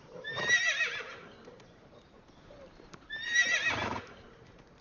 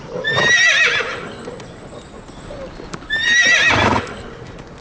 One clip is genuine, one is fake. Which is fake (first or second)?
first